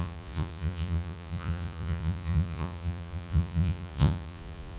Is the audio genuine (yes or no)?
no